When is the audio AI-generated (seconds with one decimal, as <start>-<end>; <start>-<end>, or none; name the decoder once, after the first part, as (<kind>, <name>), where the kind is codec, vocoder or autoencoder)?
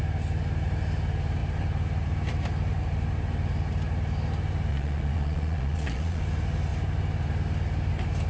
4.7-6.2 (vocoder, Vocos)